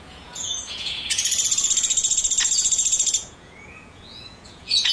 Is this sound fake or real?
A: fake